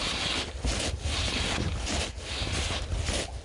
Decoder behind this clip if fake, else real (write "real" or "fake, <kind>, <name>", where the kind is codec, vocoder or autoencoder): real